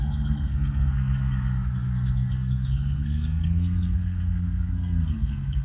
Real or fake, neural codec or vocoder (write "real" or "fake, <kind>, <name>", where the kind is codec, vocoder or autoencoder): fake, codec, SNAC